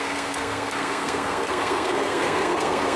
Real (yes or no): no